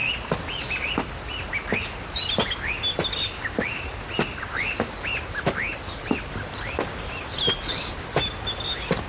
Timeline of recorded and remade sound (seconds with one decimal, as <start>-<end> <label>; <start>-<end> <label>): 0.0-7.3 recorded; 7.3-7.9 remade; 7.9-9.1 recorded